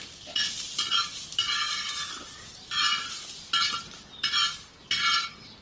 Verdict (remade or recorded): recorded